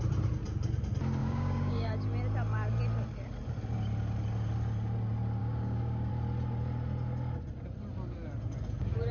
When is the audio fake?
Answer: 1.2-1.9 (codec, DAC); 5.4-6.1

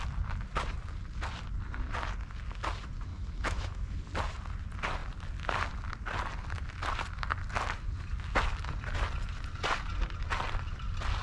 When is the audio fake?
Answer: 3.1-4.0 (autoencoder, DAC-VAE)

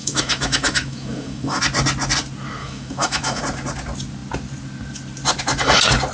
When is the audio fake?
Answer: 0.0-1.6 (autoencoder, DAC-VAE); 2.6-3.4

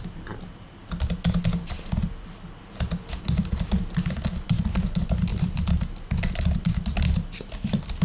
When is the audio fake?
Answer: none